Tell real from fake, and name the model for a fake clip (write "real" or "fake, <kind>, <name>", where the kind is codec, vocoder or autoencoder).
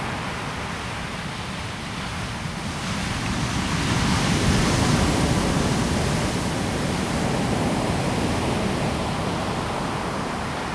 real